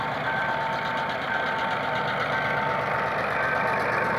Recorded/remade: recorded